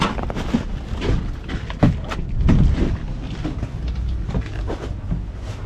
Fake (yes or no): no